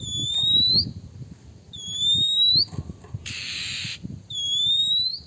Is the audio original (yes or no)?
no